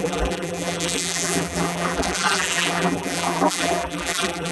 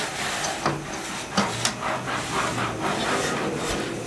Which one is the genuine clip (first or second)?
second